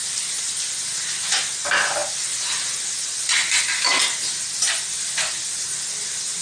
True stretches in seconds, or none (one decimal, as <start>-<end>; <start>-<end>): 0.7-6.4